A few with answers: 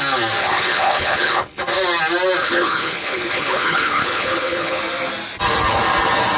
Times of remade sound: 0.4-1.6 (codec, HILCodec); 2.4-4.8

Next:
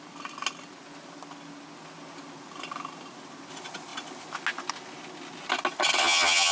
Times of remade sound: 6.0-6.5 (vocoder, HiFi-GAN)

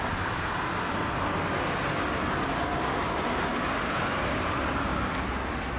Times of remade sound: none

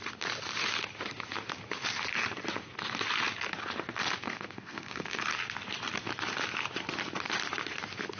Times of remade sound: 4.2-5.2 (codec, SNAC)